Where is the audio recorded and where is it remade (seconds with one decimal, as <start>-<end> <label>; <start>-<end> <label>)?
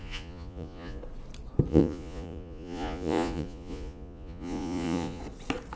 0.0-1.0 remade; 1.0-1.7 recorded; 1.7-5.2 remade; 5.2-5.8 recorded